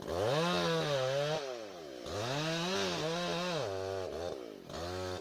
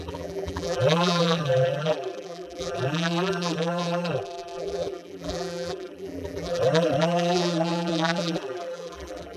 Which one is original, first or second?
first